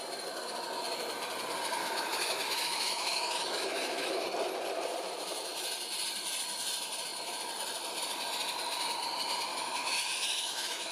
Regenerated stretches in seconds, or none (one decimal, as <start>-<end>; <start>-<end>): 1.8-4.2; 9.5-10.9